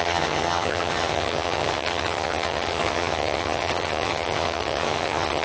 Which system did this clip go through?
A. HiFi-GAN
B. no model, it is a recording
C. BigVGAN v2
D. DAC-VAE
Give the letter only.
A